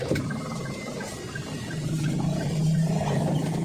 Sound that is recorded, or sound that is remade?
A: remade